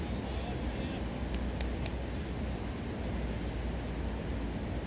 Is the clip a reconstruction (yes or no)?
no